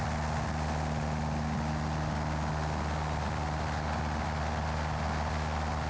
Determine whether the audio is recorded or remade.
recorded